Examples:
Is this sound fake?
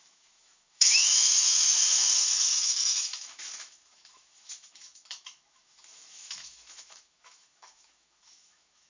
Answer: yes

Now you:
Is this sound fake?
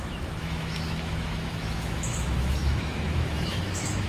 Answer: yes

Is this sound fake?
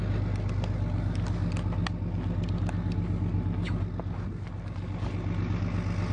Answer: no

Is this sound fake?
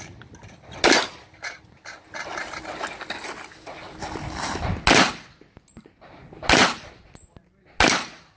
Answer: no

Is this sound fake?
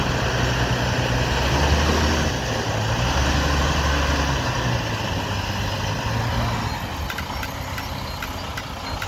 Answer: no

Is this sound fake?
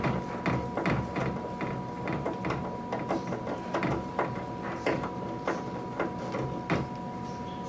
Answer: no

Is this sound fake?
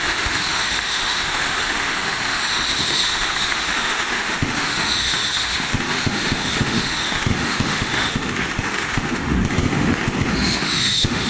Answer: yes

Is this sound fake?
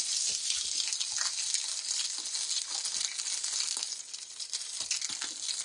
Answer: no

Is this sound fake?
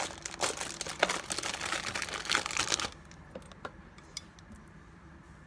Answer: no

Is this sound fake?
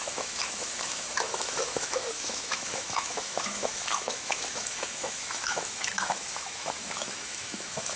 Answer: yes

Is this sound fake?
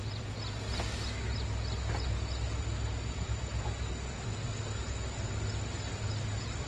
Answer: no